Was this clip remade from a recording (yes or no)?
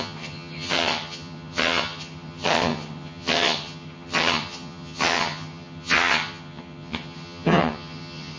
yes